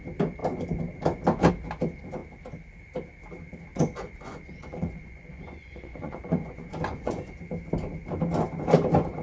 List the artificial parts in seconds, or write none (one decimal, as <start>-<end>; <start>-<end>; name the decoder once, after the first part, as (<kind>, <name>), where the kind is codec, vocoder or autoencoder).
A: 3.7-7.3 (vocoder, Vocos)